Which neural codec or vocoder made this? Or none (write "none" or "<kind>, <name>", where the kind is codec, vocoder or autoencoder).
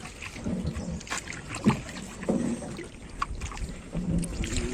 none